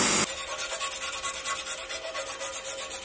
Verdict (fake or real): real